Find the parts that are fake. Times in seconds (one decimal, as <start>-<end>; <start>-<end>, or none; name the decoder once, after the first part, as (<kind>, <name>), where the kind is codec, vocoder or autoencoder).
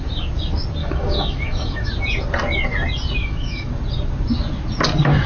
0.8-1.9 (autoencoder, DAC-VAE); 3.2-3.7